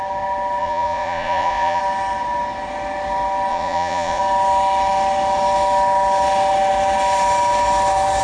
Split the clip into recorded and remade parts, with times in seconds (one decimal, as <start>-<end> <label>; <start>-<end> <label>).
0.0-0.6 recorded; 0.6-1.8 remade; 1.8-3.5 recorded; 3.5-4.2 remade; 4.2-8.2 recorded